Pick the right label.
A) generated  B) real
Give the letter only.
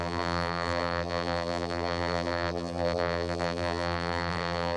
A